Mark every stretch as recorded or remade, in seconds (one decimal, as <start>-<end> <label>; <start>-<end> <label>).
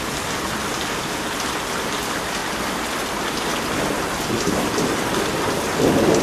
0.0-6.2 recorded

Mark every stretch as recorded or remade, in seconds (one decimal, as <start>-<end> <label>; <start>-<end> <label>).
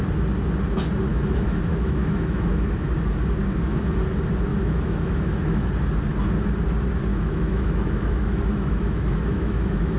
0.0-1.1 recorded; 1.1-2.8 remade; 2.8-4.5 recorded; 4.5-5.7 remade; 5.7-7.1 recorded; 7.1-10.0 remade